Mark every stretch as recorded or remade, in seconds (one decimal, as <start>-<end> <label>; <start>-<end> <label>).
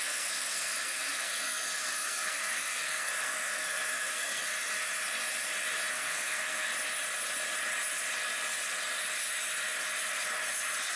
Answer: 0.0-4.5 remade; 4.5-5.9 recorded; 5.9-6.7 remade; 6.7-11.0 recorded